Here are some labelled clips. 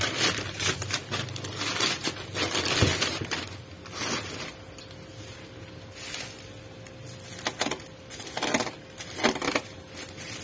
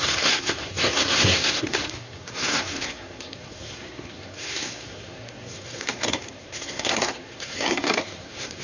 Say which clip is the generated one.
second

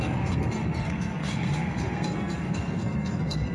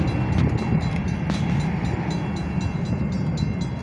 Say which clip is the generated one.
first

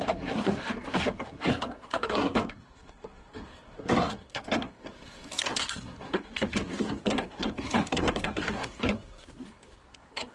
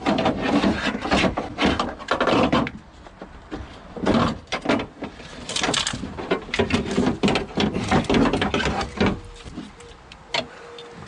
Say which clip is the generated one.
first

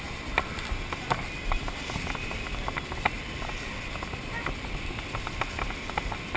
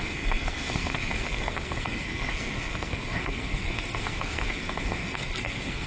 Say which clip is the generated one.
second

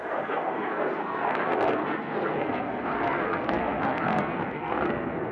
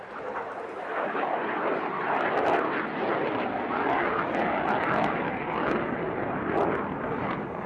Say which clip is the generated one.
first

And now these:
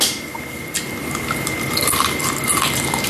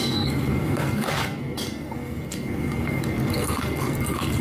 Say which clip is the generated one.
second